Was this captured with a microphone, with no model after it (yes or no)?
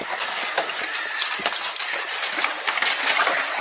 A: yes